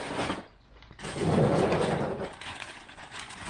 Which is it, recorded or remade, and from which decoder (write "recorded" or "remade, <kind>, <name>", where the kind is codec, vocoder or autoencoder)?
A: remade, vocoder, Vocos